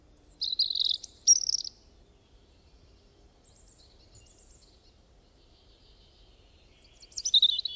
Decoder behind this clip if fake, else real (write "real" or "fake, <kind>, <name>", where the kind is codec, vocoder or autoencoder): real